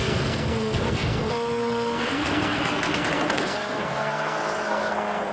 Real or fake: fake